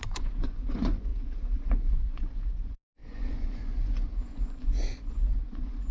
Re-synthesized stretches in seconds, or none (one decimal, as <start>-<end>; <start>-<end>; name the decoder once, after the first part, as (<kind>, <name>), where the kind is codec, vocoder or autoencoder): 0.0-5.9 (vocoder, Vocos)